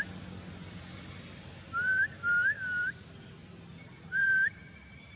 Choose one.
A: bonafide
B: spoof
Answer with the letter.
B